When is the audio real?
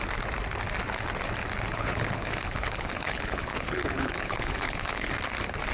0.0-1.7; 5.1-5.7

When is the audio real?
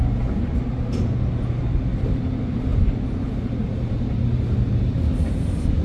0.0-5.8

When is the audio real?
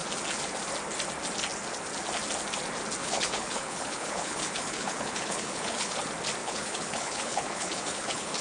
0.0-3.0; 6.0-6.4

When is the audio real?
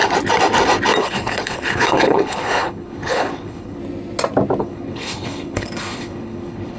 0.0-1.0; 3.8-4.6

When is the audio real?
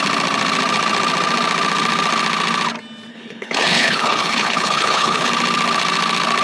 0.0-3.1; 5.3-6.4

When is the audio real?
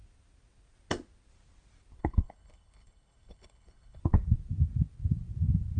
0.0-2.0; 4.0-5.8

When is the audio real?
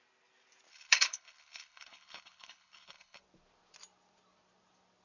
0.0-0.7; 3.2-5.0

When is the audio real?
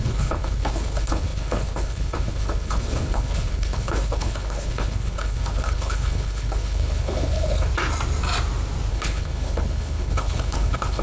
7.7-8.9